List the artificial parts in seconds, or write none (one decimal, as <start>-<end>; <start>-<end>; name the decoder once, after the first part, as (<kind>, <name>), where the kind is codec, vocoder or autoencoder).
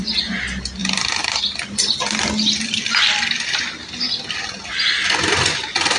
none